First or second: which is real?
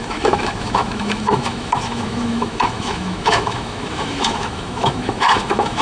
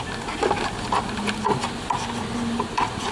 second